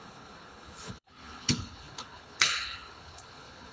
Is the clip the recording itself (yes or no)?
no